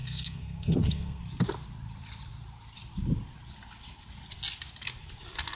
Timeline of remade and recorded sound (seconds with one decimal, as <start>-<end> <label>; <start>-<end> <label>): 0.0-1.2 remade; 1.2-5.6 recorded